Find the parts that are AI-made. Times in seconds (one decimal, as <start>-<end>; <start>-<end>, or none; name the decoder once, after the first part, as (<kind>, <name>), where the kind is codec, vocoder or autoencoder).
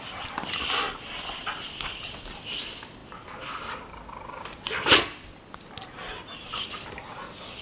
none